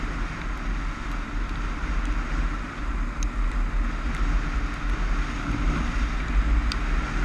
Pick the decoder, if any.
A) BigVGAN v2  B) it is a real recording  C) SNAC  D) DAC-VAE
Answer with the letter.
B